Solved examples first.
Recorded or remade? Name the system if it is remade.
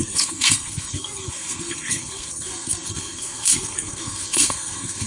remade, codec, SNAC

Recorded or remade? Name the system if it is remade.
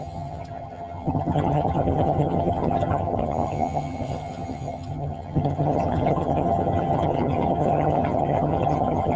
remade, vocoder, HiFi-GAN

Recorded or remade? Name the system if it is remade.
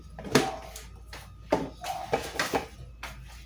recorded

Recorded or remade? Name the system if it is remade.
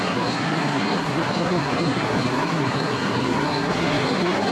remade, codec, SNAC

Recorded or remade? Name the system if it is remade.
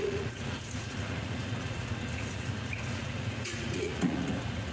remade, vocoder, Vocos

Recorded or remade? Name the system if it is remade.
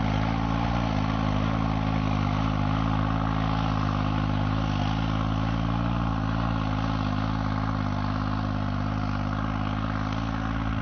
recorded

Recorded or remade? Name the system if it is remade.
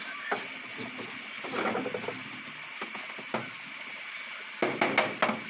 recorded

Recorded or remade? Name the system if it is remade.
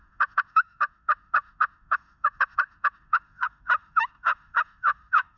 remade, autoencoder, DAC-VAE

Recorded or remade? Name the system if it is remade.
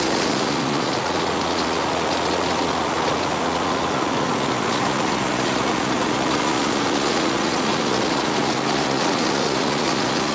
remade, vocoder, Vocos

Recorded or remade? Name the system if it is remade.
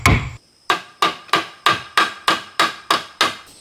recorded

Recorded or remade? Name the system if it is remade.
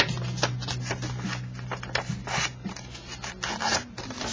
recorded